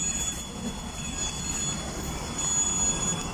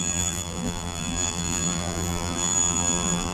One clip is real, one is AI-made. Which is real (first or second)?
first